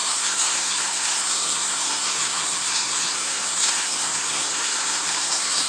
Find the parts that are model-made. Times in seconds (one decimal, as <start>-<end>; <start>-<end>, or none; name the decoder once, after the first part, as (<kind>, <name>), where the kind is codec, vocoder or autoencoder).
0.0-5.7 (codec, SNAC)